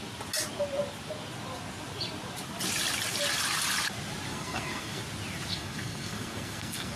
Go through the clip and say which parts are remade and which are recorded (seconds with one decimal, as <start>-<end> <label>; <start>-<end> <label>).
0.0-4.3 recorded; 4.3-5.0 remade; 5.0-5.5 recorded; 5.5-7.0 remade